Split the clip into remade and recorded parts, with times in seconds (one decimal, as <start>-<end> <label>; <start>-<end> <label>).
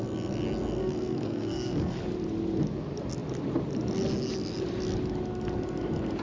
0.0-0.8 recorded; 0.8-2.0 remade; 2.0-6.2 recorded